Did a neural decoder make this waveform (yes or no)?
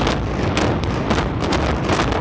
no